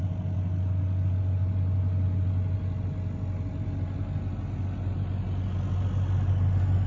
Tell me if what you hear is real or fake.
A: real